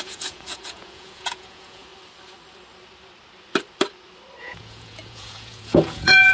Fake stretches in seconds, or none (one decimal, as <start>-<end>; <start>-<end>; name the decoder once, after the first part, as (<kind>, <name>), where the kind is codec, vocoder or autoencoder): 0.0-1.9 (vocoder, Vocos); 4.4-6.3